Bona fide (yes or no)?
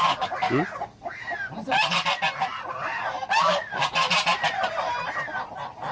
yes